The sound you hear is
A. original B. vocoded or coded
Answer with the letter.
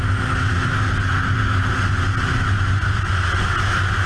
A